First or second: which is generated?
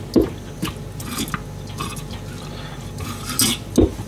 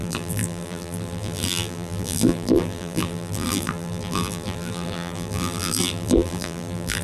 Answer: second